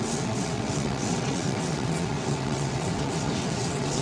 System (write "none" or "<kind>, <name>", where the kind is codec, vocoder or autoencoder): vocoder, WaveNeXt